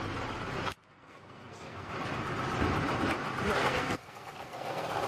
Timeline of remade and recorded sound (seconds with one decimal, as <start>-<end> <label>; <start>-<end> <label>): 0.0-0.9 recorded; 0.9-1.9 remade; 1.9-3.6 recorded; 3.6-5.1 remade

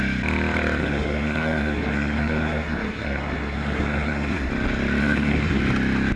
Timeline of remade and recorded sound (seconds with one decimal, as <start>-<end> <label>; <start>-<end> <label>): 0.0-0.8 recorded; 0.8-4.5 remade; 4.5-5.0 recorded; 5.0-5.6 remade; 5.6-6.2 recorded

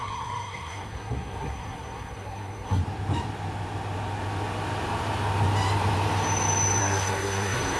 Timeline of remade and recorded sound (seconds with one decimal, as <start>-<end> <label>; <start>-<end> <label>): 0.0-2.8 remade; 2.8-6.8 recorded; 6.8-7.8 remade

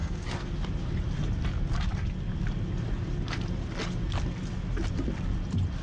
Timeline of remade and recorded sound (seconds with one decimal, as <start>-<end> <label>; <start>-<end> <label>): 0.0-0.5 remade; 0.5-5.8 recorded

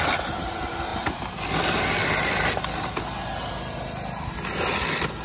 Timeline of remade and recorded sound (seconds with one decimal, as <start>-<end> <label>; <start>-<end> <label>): 0.0-5.2 recorded